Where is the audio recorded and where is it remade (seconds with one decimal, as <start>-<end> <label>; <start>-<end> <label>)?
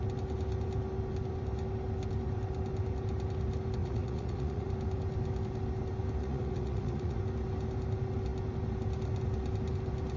0.0-3.8 recorded; 3.8-4.7 remade; 4.7-6.2 recorded; 6.2-7.2 remade; 7.2-10.2 recorded